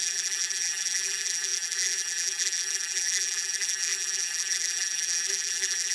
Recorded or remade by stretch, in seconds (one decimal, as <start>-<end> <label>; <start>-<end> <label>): 0.0-5.9 remade